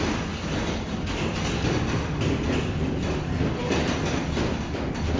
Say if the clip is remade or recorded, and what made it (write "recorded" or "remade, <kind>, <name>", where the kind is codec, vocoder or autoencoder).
recorded